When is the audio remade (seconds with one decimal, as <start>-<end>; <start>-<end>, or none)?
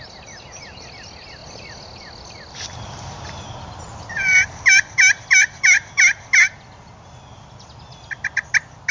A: none